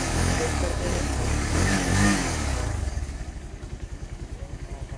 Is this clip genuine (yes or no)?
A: no